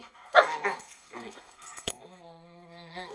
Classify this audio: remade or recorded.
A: remade